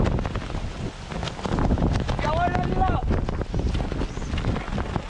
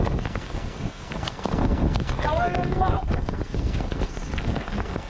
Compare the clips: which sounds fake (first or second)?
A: second